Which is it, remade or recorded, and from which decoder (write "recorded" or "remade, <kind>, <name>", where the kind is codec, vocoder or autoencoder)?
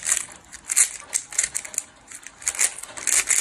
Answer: recorded